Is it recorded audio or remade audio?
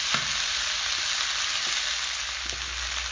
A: recorded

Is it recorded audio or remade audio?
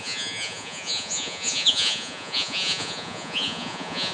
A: remade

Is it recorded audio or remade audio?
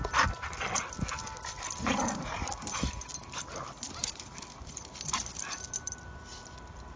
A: remade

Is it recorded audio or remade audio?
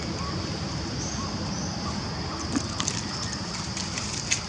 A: recorded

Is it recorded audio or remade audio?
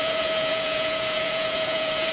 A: remade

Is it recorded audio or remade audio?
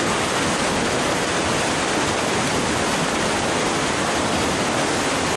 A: recorded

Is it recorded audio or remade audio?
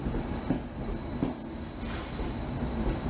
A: recorded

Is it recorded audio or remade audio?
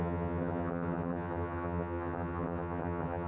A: remade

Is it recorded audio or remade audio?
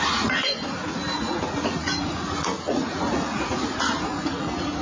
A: remade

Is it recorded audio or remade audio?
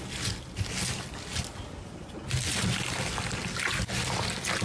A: recorded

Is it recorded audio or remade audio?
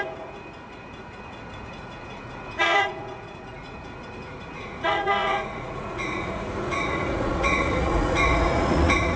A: remade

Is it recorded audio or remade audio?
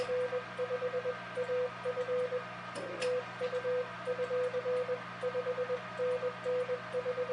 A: recorded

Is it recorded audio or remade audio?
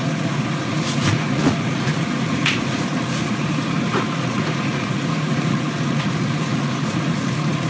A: remade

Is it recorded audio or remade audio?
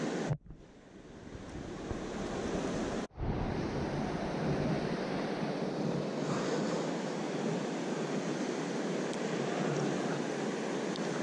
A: recorded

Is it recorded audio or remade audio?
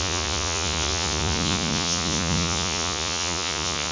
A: remade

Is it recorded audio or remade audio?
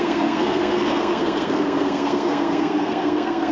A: remade